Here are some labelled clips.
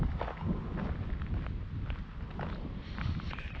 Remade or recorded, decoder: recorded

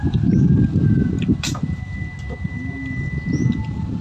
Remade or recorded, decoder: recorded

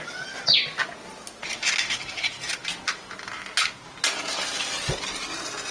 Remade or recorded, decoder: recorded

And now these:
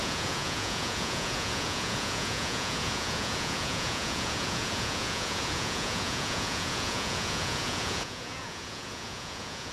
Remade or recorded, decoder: remade, vocoder, Vocos